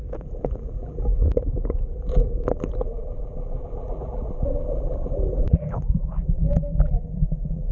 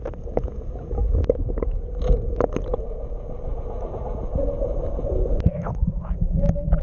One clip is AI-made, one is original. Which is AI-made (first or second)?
first